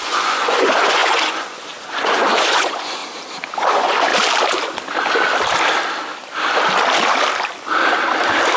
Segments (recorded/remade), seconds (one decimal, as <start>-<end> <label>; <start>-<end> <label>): 0.0-3.0 remade; 3.0-3.6 recorded; 3.6-4.1 remade; 4.1-8.6 recorded